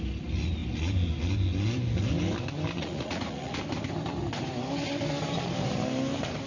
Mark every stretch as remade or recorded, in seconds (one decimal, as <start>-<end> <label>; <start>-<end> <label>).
0.0-2.8 recorded; 2.8-3.6 remade; 3.6-6.5 recorded

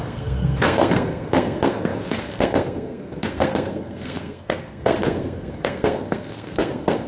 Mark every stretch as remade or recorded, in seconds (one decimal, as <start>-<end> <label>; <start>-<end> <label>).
0.0-7.1 remade

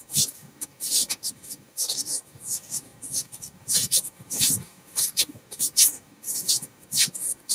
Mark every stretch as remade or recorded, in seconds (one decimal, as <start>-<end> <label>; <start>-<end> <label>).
0.0-7.5 remade

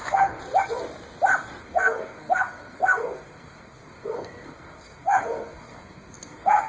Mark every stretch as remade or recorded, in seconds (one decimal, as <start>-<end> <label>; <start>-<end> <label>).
0.0-0.4 remade; 0.4-1.6 recorded; 1.6-6.7 remade

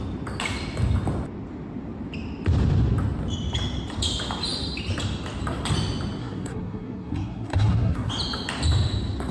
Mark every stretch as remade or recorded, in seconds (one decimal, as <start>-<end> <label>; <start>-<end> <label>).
0.0-6.2 recorded; 6.2-8.1 remade; 8.1-9.3 recorded

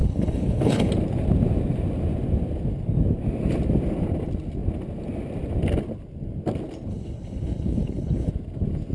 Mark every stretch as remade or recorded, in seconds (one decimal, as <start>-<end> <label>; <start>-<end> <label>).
0.0-0.9 remade; 0.9-6.9 recorded; 6.9-8.3 remade; 8.3-8.9 recorded

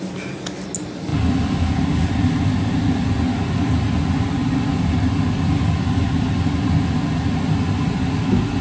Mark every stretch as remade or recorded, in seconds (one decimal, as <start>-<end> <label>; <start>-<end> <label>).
0.0-8.6 recorded

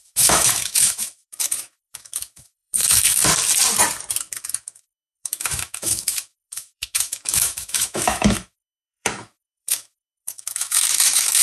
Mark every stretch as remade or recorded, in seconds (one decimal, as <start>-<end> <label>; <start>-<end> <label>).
0.0-3.2 remade; 3.2-4.2 recorded; 4.2-11.4 remade